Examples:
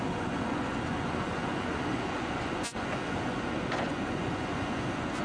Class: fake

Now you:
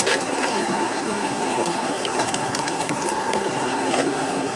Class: fake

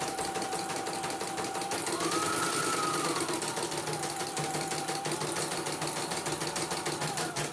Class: real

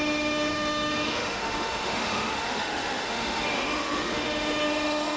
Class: fake